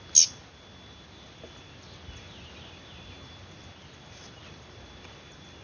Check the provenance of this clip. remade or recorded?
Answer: recorded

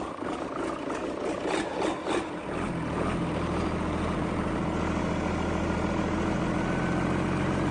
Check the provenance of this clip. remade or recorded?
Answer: recorded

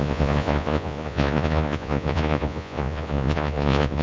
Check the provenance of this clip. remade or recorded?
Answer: remade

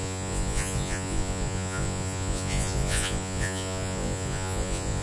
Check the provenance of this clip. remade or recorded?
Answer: remade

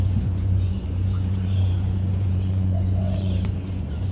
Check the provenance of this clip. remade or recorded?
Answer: remade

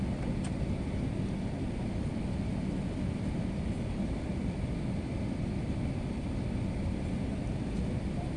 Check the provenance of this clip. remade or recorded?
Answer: recorded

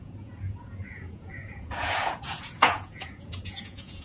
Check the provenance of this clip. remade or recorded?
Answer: remade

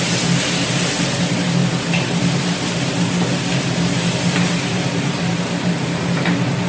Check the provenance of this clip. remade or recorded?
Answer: recorded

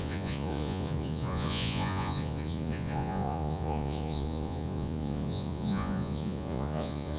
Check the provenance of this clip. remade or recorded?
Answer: remade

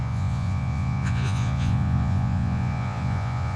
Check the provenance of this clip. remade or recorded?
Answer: remade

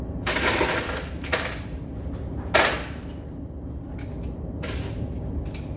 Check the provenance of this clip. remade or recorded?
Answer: recorded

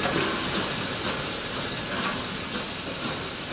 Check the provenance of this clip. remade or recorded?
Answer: recorded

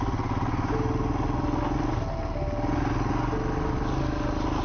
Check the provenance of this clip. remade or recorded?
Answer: recorded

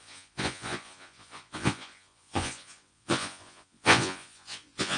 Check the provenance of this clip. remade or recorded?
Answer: remade